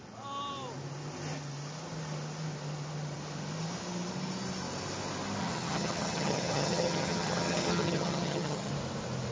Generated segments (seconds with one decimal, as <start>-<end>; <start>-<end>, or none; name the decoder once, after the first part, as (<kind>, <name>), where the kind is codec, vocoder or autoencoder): 5.4-8.7 (vocoder, HiFi-GAN)